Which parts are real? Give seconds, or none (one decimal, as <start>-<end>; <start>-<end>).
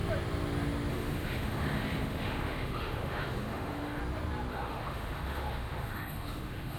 0.0-0.9; 4.0-4.5